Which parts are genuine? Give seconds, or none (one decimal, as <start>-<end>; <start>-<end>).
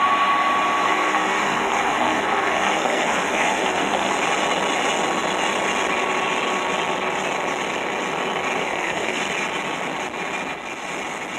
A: 0.0-0.8; 4.1-8.6; 9.2-11.4